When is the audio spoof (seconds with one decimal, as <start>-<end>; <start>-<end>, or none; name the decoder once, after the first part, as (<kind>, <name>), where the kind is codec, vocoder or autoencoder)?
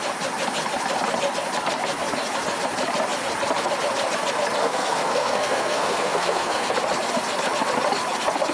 4.6-6.7 (codec, SNAC)